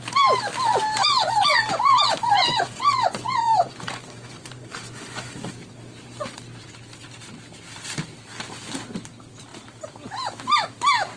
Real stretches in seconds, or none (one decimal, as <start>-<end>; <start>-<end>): 0.0-1.0; 5.5-11.2